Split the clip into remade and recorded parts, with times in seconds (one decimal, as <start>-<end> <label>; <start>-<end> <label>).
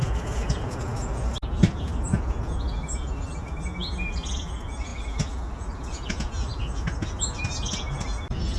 0.0-8.6 recorded